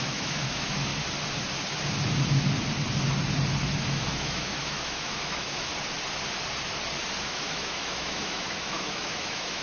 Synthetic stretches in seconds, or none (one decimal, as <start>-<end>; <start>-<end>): 0.0-0.9; 3.9-5.7; 7.2-9.6